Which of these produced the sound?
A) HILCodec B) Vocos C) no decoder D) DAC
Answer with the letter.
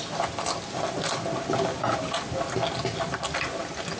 C